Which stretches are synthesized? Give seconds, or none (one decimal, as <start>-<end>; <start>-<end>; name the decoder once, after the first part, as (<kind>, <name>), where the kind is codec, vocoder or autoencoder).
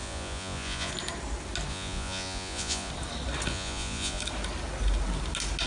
0.0-0.9 (vocoder, Vocos); 1.7-2.9; 3.5-4.2